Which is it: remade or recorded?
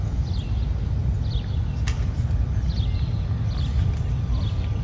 recorded